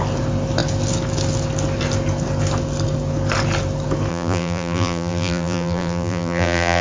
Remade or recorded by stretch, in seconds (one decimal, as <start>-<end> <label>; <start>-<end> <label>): 0.0-4.1 recorded; 4.1-6.8 remade